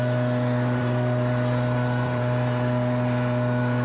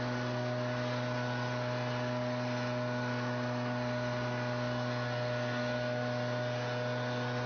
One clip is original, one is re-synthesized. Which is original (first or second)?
second